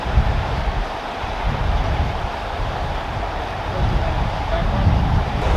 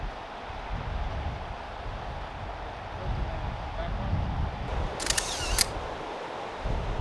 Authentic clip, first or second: second